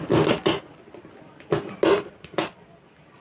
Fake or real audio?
real